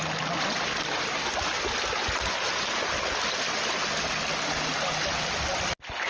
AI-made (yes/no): no